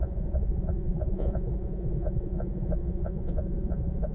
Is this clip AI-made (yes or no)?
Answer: yes